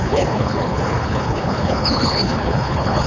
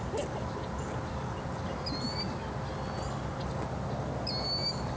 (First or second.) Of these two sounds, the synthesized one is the first